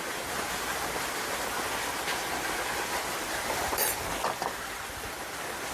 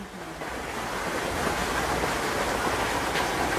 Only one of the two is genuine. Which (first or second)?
second